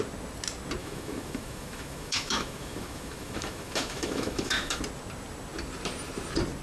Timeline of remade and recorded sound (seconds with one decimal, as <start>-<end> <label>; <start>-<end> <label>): 0.0-0.8 recorded; 0.8-4.8 remade; 4.8-6.6 recorded